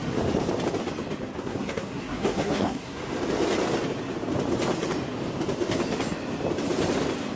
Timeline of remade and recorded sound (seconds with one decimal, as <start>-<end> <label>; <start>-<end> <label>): 0.0-1.4 recorded; 1.4-3.0 remade; 3.0-7.4 recorded